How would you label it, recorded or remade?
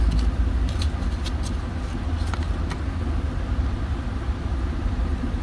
recorded